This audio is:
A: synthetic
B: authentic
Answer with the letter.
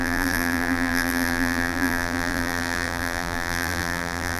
A